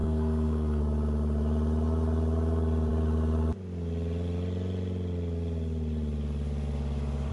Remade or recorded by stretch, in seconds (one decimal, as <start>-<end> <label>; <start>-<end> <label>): 0.0-0.8 remade; 0.8-7.3 recorded